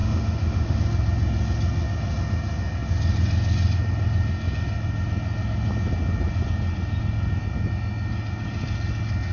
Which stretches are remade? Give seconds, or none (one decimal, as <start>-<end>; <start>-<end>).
0.0-0.8